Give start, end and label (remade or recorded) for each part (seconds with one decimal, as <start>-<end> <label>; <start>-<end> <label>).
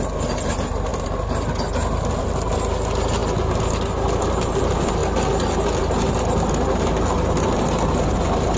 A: 0.0-8.6 recorded